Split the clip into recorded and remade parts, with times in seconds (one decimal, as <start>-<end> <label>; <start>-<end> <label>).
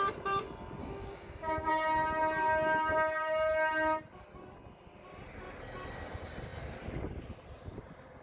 0.0-0.8 recorded; 0.8-1.7 remade; 1.7-8.2 recorded